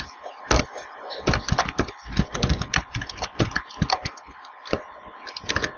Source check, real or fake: real